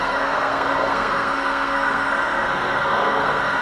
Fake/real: fake